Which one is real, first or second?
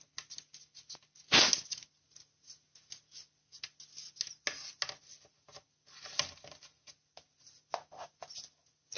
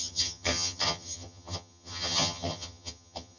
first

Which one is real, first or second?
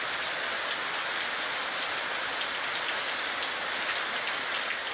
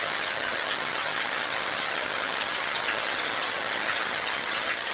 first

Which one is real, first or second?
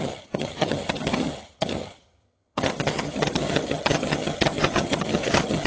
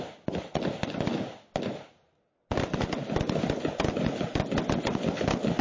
second